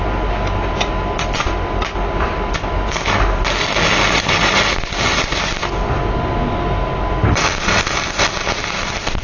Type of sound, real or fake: real